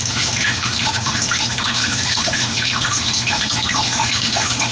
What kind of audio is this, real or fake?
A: fake